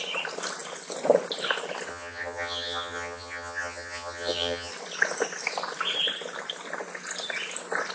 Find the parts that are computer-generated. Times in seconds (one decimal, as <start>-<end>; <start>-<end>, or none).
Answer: 1.9-4.7